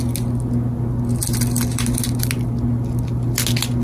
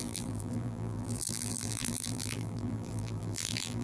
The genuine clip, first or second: first